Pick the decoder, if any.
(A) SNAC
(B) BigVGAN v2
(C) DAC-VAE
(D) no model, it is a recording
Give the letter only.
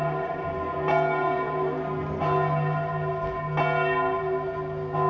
D